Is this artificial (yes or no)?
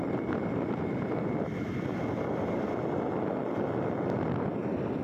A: no